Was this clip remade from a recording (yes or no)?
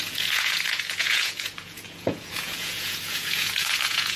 yes